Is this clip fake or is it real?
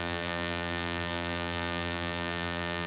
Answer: fake